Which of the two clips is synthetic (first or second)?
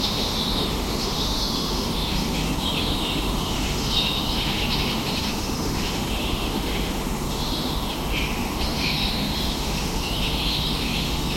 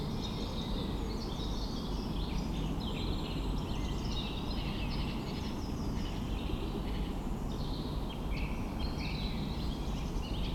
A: first